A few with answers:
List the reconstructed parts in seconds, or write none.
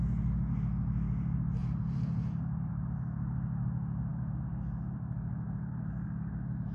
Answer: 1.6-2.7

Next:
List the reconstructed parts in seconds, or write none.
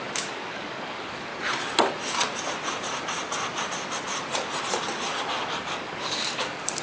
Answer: 0.0-1.3; 5.4-6.8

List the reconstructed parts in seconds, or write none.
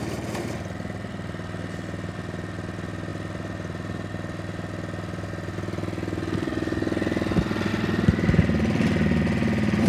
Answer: none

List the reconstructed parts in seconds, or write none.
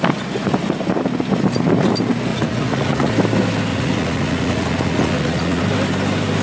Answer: 2.3-3.1; 3.7-5.6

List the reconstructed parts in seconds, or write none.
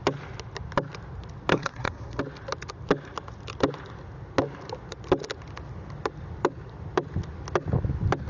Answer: 1.5-2.2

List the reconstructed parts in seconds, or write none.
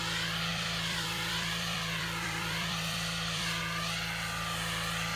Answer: 0.5-3.6